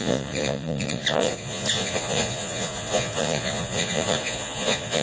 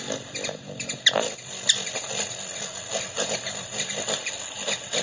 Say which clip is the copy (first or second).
first